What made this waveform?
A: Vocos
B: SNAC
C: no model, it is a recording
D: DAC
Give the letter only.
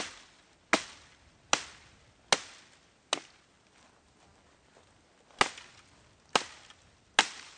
C